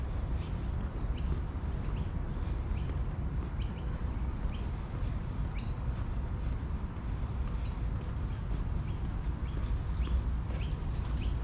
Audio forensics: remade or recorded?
recorded